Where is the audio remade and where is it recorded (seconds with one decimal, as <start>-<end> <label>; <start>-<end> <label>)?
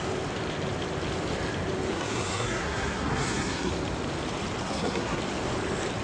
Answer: 0.0-1.9 recorded; 1.9-3.7 remade; 3.7-4.6 recorded; 4.6-5.2 remade; 5.2-6.0 recorded